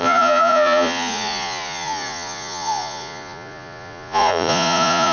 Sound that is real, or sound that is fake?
fake